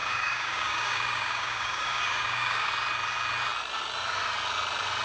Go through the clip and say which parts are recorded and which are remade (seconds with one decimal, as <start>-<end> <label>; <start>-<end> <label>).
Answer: 0.0-2.7 remade; 2.7-5.0 recorded